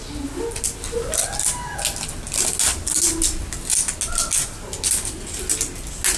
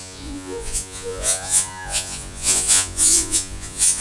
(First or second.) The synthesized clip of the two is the second